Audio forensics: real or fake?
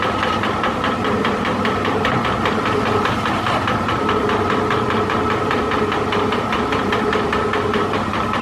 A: fake